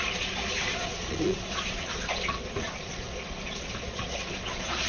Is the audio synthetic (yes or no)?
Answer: yes